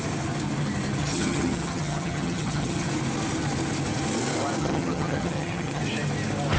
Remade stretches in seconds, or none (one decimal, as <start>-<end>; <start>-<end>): 1.0-2.9; 4.6-5.8